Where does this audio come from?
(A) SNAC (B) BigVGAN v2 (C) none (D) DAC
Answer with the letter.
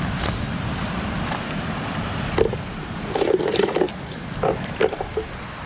B